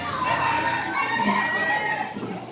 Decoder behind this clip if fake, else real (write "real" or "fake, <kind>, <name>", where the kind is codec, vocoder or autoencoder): real